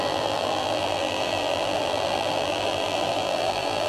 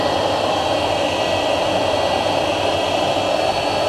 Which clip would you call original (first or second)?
second